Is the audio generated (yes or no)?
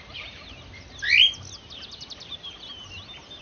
no